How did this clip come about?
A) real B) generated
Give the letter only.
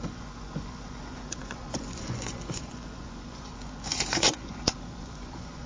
B